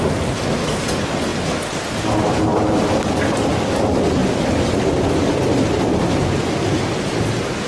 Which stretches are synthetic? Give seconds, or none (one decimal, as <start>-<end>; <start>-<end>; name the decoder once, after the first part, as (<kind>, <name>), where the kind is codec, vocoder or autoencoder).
2.5-3.6 (vocoder, BigVGAN v2)